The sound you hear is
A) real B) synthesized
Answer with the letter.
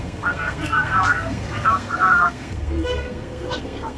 B